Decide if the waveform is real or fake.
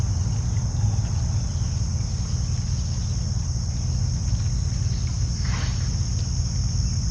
real